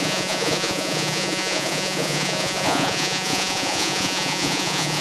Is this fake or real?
fake